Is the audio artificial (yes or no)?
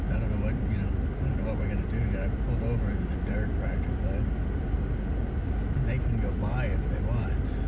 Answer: no